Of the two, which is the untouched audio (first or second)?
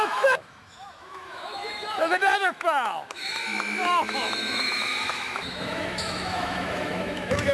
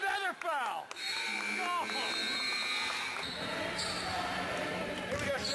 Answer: second